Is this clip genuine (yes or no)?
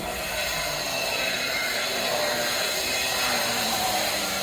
no